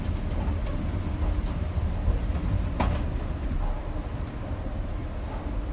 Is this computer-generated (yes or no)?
no